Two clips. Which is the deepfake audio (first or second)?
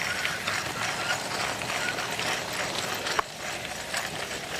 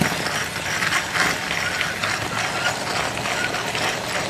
first